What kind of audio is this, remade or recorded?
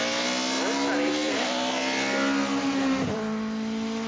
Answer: recorded